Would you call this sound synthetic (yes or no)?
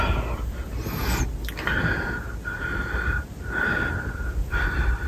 no